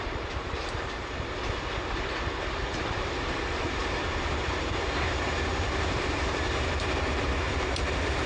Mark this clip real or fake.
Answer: fake